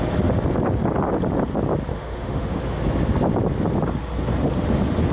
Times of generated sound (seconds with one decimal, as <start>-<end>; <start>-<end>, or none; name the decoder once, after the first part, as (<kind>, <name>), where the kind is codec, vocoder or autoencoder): 1.9-2.8 (autoencoder, DAC-VAE)